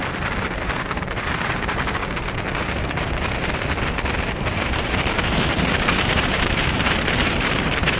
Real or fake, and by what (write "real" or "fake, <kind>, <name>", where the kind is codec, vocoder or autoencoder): fake, vocoder, BigVGAN v2